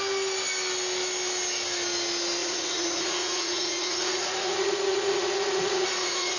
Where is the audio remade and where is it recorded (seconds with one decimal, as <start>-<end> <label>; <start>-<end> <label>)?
0.0-2.4 recorded; 2.4-6.4 remade